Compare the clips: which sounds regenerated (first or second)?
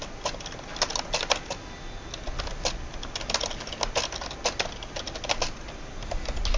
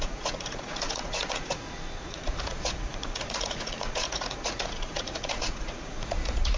second